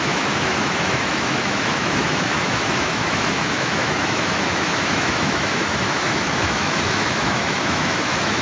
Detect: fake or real fake